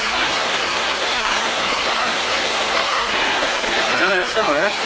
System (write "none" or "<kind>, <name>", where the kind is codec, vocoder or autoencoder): codec, SNAC